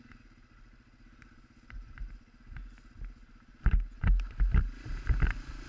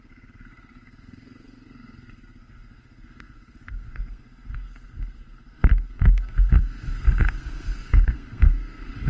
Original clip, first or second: first